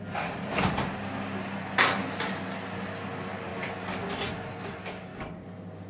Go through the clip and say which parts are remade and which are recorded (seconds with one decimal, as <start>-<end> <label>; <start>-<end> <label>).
0.0-5.9 recorded